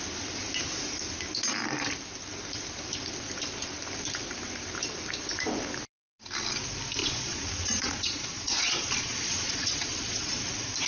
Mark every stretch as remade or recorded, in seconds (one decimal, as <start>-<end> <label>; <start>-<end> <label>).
0.0-7.0 recorded; 7.0-10.4 remade; 10.4-10.9 recorded